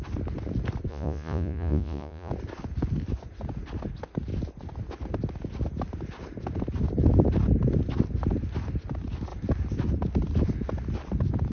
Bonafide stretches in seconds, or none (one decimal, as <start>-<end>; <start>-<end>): 0.0-0.9; 2.3-11.5